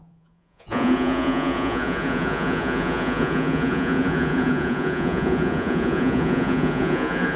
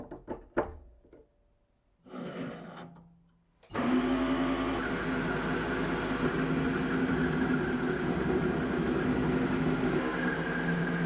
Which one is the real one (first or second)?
second